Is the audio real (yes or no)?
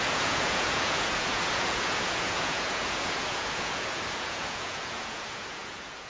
no